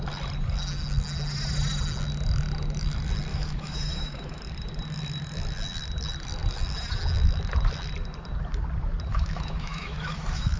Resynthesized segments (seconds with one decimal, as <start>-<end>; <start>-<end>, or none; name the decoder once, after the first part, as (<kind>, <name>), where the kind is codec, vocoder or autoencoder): 3.3-4.4 (autoencoder, DAC-VAE); 9.1-10.6